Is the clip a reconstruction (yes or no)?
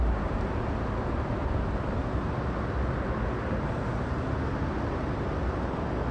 no